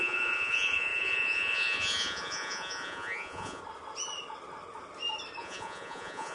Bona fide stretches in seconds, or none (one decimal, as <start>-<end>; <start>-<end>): 3.6-5.4